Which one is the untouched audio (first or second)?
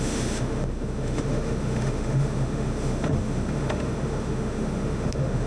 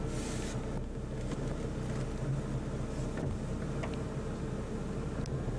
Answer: second